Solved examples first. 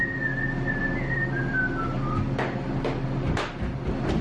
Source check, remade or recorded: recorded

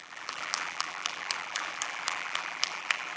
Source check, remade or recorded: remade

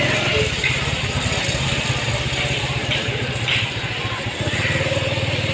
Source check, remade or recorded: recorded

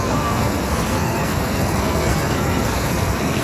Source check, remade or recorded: remade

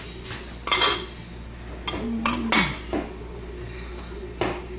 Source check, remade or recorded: recorded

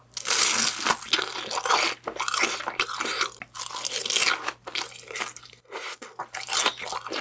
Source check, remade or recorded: recorded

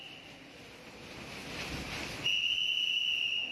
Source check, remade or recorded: recorded